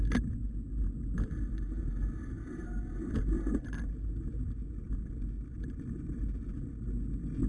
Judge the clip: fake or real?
real